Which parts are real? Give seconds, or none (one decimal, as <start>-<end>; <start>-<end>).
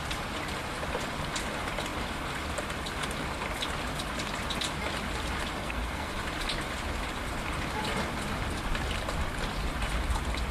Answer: 0.0-5.6; 6.2-10.5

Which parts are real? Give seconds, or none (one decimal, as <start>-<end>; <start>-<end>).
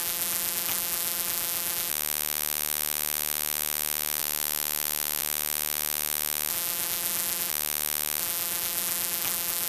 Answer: 1.9-6.5; 7.5-8.2